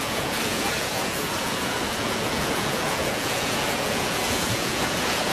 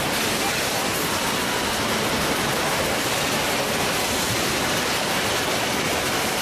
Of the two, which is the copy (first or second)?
first